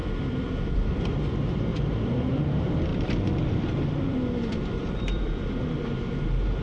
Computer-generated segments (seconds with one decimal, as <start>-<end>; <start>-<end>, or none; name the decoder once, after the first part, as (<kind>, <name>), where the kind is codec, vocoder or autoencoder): 0.0-1.1 (vocoder, BigVGAN v2); 1.7-2.4; 2.9-5.3